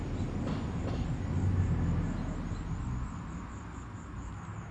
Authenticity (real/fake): real